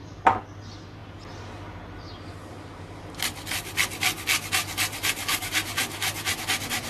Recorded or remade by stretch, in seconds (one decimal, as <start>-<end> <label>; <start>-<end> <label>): 0.0-5.2 recorded; 5.2-5.8 remade; 5.8-6.9 recorded